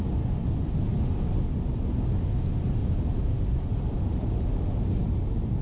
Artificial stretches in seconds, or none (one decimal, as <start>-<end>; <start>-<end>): 2.8-4.3